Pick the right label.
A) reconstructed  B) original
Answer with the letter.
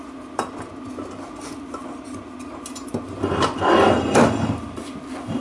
B